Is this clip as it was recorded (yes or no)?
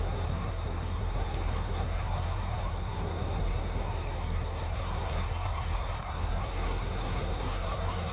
no